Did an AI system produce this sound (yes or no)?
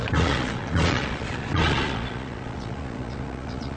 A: yes